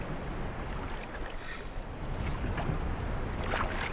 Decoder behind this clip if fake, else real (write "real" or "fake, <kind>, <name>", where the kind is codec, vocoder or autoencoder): real